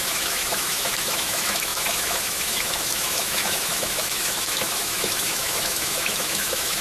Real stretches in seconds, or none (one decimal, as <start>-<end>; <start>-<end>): none